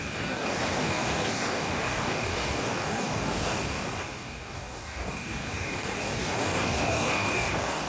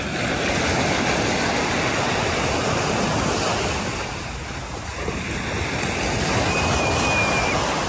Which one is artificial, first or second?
first